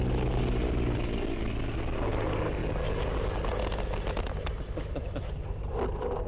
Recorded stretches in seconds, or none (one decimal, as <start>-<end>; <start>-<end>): 0.0-6.3